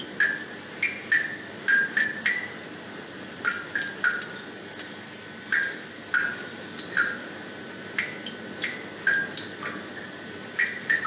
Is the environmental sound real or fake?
real